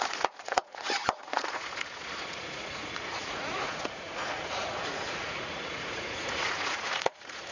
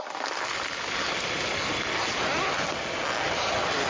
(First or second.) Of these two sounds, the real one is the second